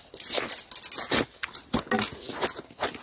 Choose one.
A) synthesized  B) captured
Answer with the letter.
B